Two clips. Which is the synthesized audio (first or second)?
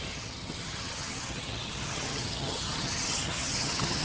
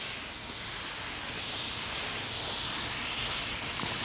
first